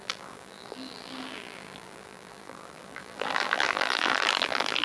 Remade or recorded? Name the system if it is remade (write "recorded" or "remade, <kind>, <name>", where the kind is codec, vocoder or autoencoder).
remade, vocoder, BigVGAN v2